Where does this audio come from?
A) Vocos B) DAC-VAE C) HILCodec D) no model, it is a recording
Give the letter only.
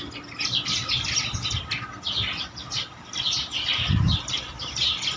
D